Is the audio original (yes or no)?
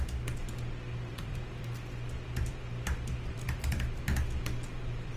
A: no